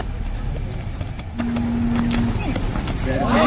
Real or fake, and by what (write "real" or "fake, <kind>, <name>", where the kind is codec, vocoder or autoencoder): real